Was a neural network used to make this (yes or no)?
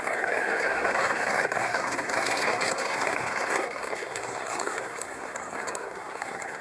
yes